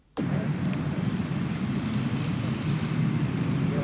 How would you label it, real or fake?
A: fake